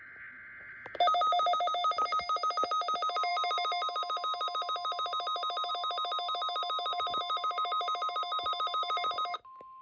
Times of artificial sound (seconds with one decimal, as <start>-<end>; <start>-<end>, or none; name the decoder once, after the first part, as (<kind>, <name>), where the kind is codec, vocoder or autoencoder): none